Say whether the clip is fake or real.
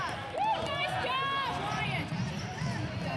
real